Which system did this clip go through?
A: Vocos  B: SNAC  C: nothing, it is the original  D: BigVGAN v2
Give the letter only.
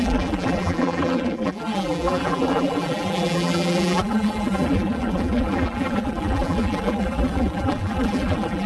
D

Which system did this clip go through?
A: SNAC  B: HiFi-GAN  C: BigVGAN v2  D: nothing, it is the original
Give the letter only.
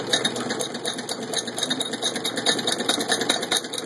D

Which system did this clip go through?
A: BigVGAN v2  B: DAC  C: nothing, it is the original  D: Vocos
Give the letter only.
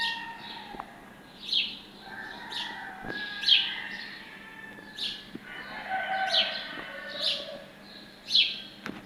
C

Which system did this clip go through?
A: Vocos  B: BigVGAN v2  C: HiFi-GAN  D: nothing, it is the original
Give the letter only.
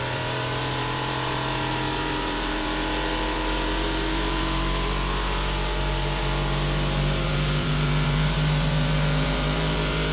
B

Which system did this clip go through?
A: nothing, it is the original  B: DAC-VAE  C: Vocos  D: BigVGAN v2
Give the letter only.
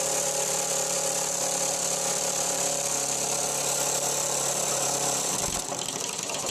D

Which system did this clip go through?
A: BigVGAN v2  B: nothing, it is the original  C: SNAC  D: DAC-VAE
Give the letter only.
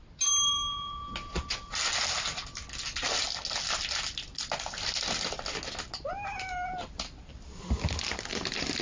B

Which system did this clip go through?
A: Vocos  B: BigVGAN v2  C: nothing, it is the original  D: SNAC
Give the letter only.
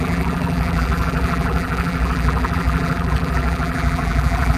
B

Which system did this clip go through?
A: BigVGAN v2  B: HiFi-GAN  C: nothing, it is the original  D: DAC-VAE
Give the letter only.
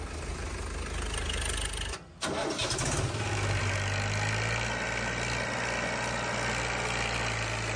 C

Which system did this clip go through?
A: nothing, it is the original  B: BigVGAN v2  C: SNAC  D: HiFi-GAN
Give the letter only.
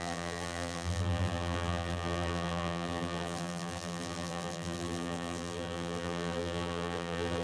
B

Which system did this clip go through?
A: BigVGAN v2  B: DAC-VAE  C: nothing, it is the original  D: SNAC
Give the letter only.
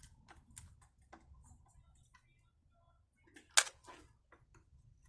C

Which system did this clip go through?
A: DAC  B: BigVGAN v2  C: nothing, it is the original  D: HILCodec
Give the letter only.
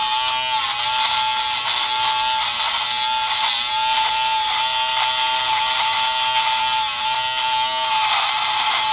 C